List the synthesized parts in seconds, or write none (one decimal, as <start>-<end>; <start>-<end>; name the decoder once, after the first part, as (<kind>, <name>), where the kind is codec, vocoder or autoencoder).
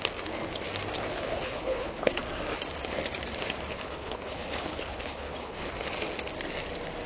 1.1-2.2 (codec, HILCodec); 3.7-5.7